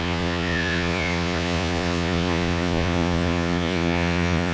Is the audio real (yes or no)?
no